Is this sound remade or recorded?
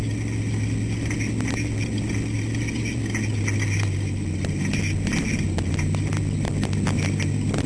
recorded